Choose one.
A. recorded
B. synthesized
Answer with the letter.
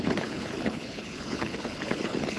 B